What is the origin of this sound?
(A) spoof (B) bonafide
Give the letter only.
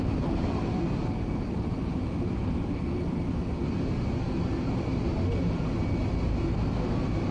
B